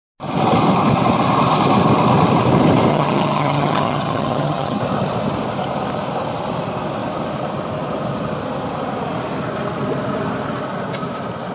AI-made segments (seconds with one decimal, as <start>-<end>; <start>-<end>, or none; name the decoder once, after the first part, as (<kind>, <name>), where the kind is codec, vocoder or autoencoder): 2.9-4.8 (vocoder, HiFi-GAN)